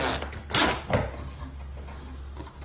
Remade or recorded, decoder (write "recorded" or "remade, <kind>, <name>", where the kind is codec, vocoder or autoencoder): recorded